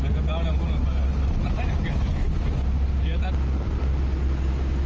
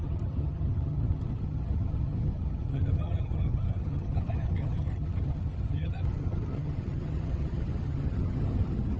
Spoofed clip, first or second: second